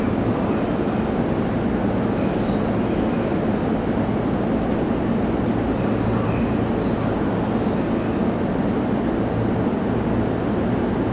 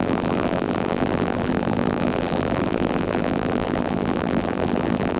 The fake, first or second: second